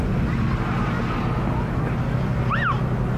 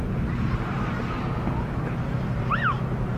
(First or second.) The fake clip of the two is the second